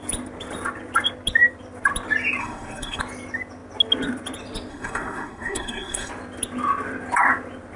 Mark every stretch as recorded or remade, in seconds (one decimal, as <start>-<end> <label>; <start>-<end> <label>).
0.0-2.4 recorded; 2.4-3.0 remade; 3.0-4.7 recorded; 4.7-6.1 remade; 6.1-7.8 recorded